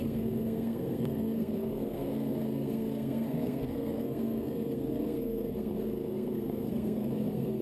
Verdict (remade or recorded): remade